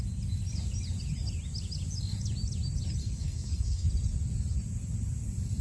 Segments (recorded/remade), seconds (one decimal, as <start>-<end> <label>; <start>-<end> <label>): 0.0-3.0 recorded; 3.0-3.9 remade; 3.9-5.6 recorded